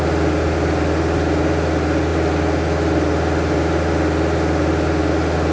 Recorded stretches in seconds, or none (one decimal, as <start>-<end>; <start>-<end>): 0.0-5.5